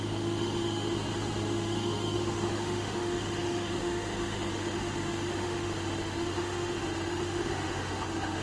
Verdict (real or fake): fake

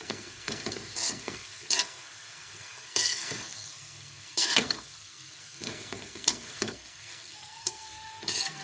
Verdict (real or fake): fake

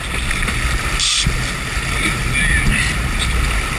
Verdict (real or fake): real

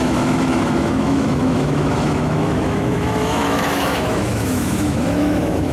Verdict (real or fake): fake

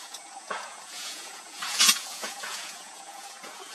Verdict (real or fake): fake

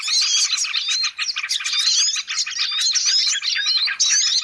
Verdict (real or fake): real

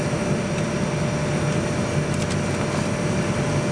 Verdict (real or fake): real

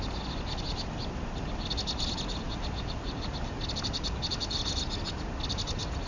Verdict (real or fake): real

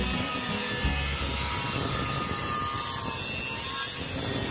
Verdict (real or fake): real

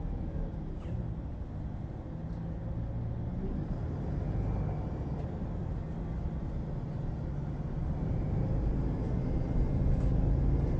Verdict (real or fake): real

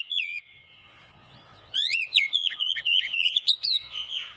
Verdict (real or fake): fake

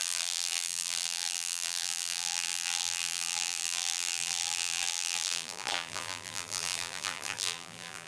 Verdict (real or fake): fake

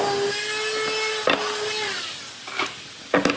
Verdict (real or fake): real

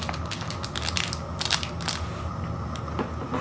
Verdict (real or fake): real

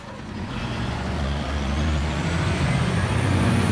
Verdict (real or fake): fake